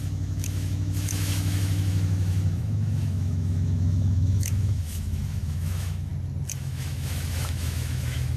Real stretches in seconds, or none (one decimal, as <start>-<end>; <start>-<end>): 6.1-6.6